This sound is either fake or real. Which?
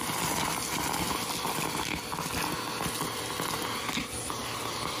real